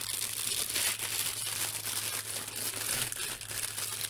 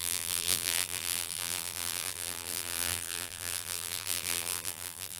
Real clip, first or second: first